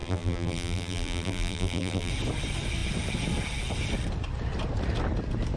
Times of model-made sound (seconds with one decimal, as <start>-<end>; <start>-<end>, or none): 0.0-2.1